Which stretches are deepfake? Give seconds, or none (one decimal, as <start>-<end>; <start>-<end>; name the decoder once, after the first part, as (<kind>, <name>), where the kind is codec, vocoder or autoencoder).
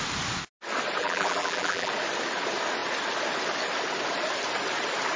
1.0-1.9 (vocoder, BigVGAN v2)